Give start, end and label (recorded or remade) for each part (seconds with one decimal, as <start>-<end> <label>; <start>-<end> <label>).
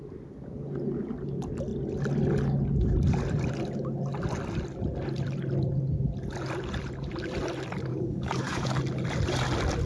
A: 0.0-7.9 recorded; 7.9-8.8 remade; 8.8-9.9 recorded